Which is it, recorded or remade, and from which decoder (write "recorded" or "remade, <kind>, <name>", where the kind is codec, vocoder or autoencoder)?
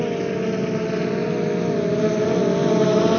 recorded